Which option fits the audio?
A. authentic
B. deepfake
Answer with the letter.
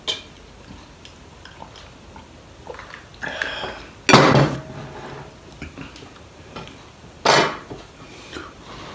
A